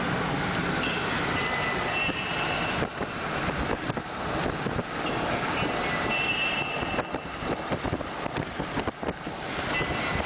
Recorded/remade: recorded